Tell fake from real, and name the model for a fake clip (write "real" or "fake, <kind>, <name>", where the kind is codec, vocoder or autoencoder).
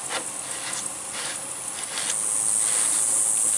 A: real